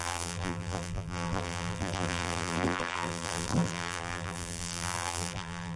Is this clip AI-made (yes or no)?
yes